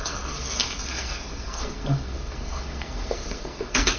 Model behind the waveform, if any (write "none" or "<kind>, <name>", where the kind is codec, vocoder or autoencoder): codec, SNAC